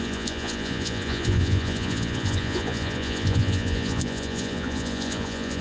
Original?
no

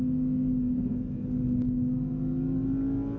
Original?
yes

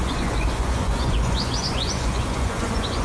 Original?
no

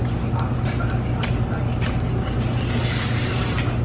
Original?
yes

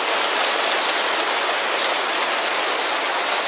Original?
yes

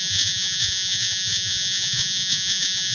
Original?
no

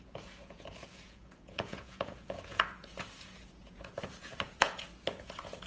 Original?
no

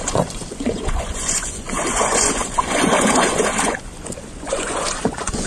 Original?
no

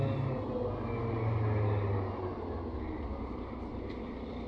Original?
yes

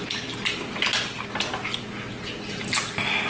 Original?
yes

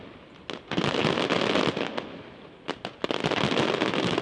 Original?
yes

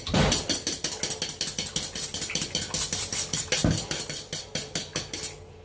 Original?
yes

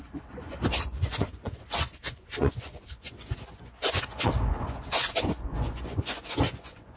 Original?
no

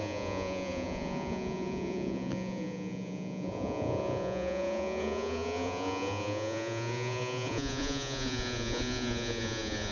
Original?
no